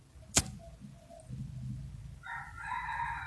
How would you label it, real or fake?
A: real